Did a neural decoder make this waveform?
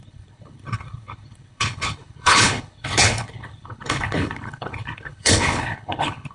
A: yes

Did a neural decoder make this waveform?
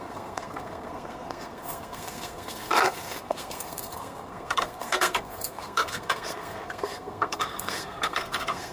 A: yes